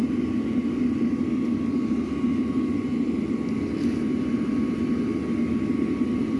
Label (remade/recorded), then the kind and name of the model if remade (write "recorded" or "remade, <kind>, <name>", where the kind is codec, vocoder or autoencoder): recorded